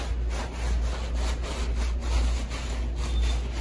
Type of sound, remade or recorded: recorded